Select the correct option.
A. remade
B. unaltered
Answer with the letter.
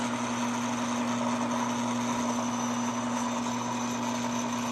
B